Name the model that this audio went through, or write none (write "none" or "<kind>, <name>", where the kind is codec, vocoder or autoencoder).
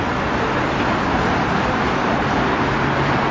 none